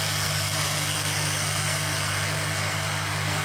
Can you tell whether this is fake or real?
fake